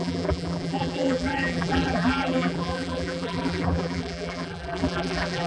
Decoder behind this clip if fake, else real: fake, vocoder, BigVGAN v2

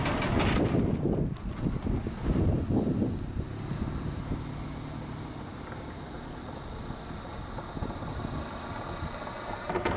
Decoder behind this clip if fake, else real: real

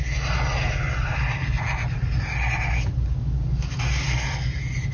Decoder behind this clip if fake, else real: real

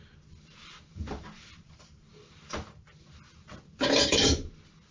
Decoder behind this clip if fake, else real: fake, vocoder, BigVGAN v2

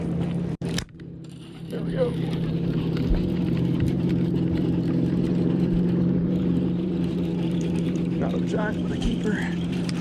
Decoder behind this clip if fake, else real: fake, vocoder, BigVGAN v2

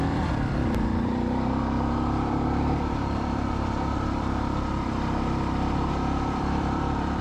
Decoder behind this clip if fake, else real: fake, vocoder, BigVGAN v2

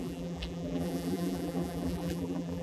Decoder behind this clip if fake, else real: fake, vocoder, BigVGAN v2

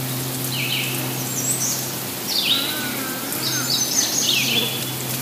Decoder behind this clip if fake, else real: fake, vocoder, BigVGAN v2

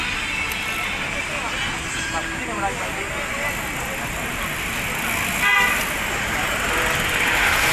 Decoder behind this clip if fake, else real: real